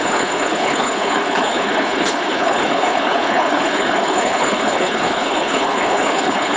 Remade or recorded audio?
remade